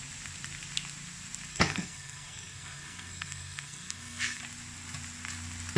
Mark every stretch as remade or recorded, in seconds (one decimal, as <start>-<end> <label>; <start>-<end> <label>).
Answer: 0.0-1.5 recorded; 1.5-4.4 remade; 4.4-5.8 recorded